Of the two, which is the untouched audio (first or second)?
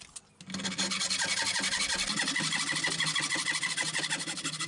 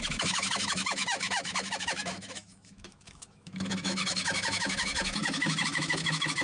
first